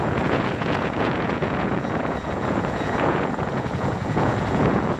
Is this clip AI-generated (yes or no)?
yes